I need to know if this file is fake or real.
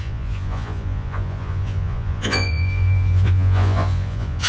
fake